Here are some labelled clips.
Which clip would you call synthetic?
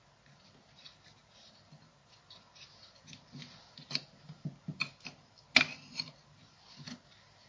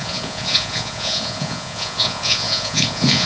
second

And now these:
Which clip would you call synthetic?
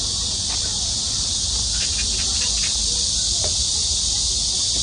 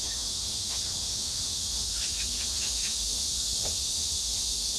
second